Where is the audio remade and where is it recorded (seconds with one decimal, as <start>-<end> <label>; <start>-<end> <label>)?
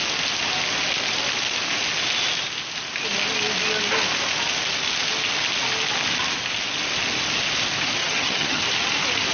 0.0-8.0 recorded; 8.0-8.6 remade; 8.6-9.3 recorded